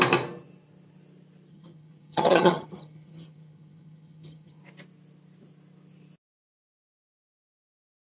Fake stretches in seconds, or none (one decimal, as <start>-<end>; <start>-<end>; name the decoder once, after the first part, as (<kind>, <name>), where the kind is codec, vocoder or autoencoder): 1.5-4.6 (vocoder, HiFi-GAN)